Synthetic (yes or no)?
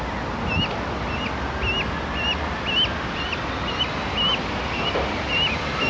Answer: no